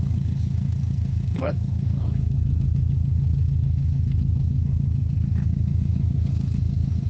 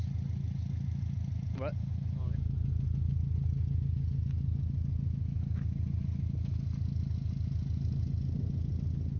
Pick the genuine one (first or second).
second